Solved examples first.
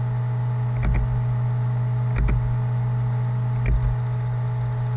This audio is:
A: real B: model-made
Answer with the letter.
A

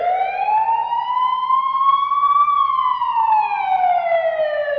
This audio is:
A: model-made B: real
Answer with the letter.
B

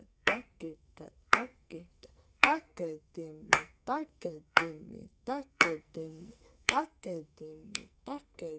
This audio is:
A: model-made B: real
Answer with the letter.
A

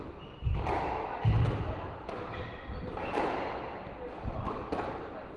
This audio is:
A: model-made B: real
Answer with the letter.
B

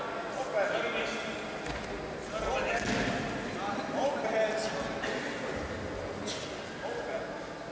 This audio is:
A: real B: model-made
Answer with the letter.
A